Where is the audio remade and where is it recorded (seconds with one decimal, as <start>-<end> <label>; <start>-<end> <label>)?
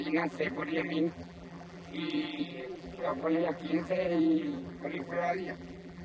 0.0-6.0 remade